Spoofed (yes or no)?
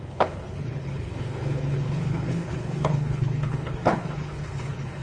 yes